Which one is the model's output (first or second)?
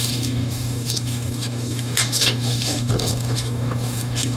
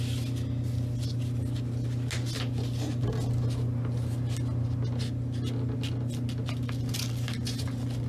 first